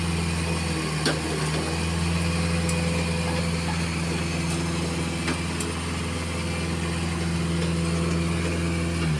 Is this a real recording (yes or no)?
yes